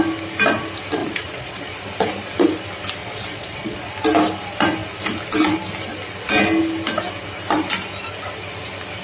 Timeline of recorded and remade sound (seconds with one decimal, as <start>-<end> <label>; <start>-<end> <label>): 0.0-1.0 recorded; 1.0-1.7 remade; 1.7-3.0 recorded; 3.0-3.9 remade; 3.9-9.0 recorded